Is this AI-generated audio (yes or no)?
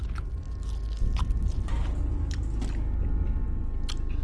no